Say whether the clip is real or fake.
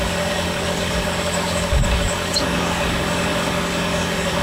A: fake